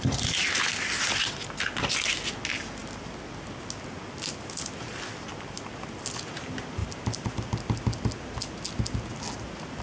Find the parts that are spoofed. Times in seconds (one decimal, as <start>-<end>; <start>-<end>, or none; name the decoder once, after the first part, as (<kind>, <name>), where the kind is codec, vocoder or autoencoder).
6.8-7.3 (vocoder, BigVGAN v2)